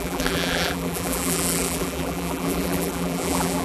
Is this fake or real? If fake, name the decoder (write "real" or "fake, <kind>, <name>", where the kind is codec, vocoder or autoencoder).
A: fake, vocoder, BigVGAN v2